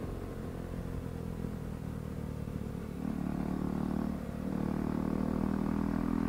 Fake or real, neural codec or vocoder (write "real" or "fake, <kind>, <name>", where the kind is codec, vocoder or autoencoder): real